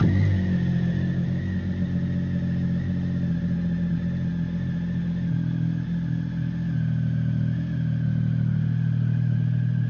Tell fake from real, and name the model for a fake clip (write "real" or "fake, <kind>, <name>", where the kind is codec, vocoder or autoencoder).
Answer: real